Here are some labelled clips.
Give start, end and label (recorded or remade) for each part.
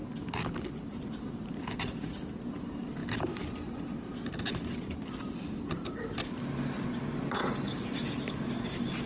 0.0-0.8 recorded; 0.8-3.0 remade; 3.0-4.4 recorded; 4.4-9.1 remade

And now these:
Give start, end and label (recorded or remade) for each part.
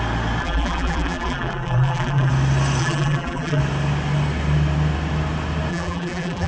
0.0-0.4 recorded; 0.4-2.3 remade; 2.3-2.8 recorded; 2.8-3.6 remade; 3.6-5.7 recorded; 5.7-6.5 remade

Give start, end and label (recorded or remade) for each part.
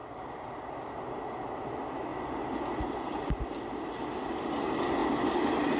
0.0-0.9 remade; 0.9-5.0 recorded; 5.0-5.8 remade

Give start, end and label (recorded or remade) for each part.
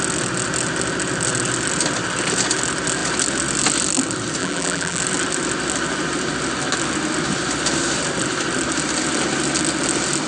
0.0-4.4 recorded; 4.4-5.0 remade; 5.0-10.3 recorded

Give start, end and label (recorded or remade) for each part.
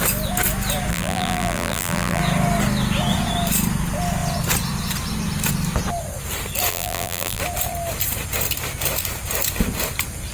0.0-0.9 recorded; 0.9-2.2 remade; 2.2-6.7 recorded; 6.7-7.4 remade; 7.4-10.3 recorded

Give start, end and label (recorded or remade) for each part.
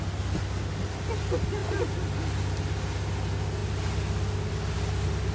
0.0-5.3 recorded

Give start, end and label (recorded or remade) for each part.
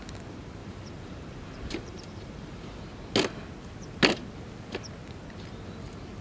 0.0-0.6 recorded; 0.6-2.7 remade; 2.7-6.2 recorded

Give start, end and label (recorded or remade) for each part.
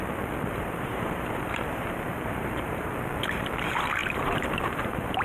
0.0-0.5 recorded; 0.5-2.9 remade; 2.9-4.0 recorded; 4.0-5.2 remade